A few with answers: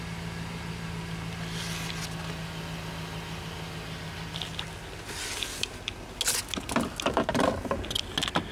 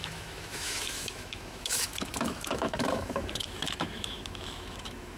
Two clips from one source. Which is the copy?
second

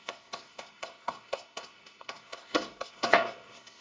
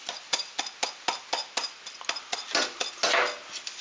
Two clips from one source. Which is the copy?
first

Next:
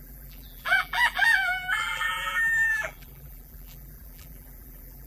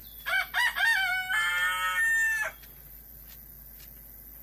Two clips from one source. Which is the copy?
first